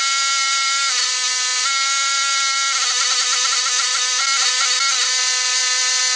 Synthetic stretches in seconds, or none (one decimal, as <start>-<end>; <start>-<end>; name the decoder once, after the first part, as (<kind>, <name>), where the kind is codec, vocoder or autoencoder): none